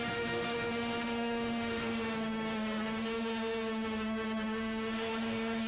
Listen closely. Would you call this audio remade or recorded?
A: remade